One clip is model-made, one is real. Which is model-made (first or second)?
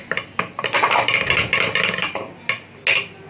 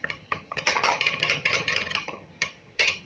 second